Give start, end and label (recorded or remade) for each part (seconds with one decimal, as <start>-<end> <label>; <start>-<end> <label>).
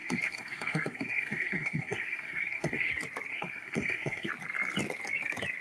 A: 0.0-2.9 remade; 2.9-3.3 recorded; 3.3-4.3 remade; 4.3-5.6 recorded